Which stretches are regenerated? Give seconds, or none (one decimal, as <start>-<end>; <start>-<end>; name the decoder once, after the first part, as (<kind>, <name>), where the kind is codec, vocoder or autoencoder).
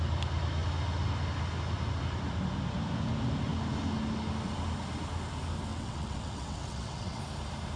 5.7-7.2 (vocoder, WaveNeXt)